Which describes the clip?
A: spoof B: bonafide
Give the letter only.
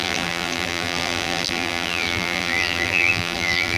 A